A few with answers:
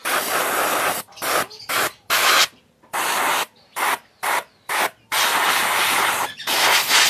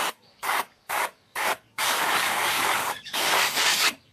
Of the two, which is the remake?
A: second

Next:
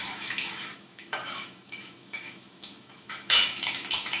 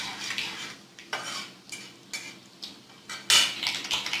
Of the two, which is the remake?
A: first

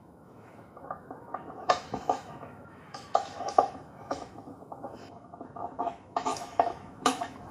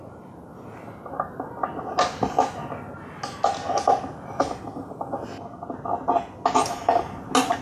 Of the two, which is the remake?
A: first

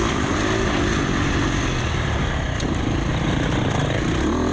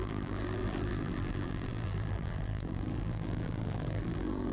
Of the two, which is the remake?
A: second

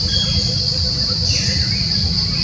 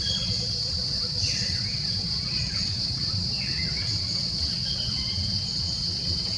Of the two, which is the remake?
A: second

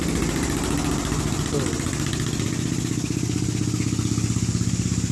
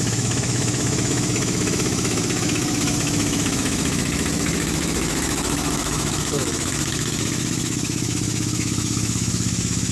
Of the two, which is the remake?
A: second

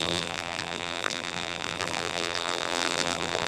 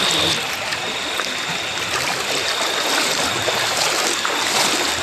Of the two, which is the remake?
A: first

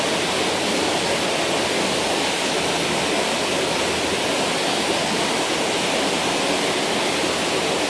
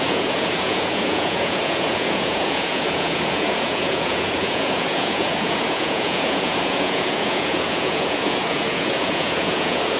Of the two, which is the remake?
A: second